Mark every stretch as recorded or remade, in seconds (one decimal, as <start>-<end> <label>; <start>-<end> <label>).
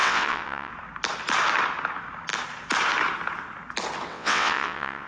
0.0-0.7 remade; 0.7-4.1 recorded; 4.1-5.1 remade